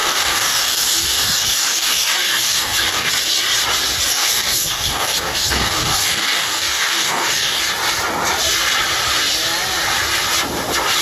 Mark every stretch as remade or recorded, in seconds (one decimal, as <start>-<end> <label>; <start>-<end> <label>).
0.0-3.1 remade; 3.1-4.1 recorded; 4.1-7.6 remade; 7.6-11.0 recorded